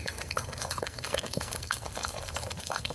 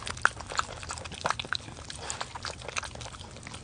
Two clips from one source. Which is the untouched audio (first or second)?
second